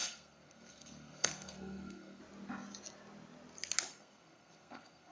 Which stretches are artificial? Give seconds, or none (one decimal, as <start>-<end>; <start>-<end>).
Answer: 0.0-2.2; 3.9-5.1